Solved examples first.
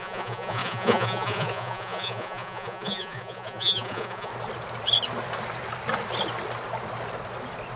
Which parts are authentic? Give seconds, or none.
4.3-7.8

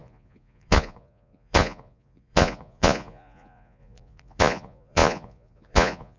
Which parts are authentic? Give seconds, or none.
none

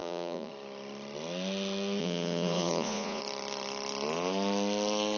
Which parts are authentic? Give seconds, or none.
0.5-2.0; 3.2-5.2

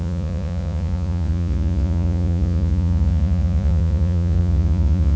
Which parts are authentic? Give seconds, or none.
none